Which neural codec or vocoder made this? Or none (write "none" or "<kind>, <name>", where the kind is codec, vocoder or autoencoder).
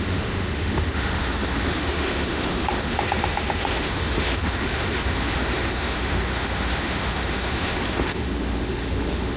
autoencoder, DAC-VAE